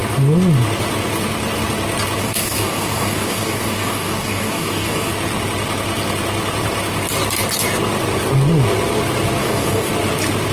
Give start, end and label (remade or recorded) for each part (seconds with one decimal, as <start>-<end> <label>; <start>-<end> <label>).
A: 0.0-2.2 recorded; 2.2-5.1 remade; 5.1-9.4 recorded; 9.4-9.9 remade; 9.9-10.5 recorded